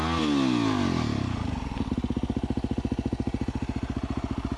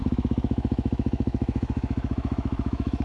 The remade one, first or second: second